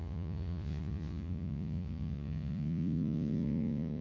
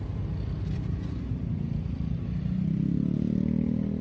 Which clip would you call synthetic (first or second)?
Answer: first